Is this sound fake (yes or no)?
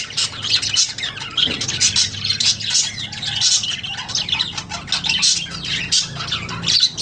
no